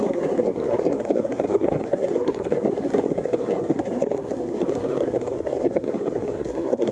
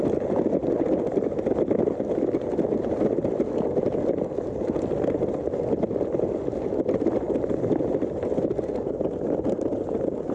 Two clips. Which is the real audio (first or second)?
second